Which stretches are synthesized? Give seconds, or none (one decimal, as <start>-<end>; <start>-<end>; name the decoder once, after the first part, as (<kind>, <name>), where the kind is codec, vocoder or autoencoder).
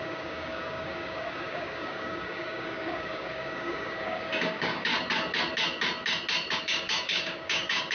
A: 0.0-4.9 (codec, DAC); 6.6-7.9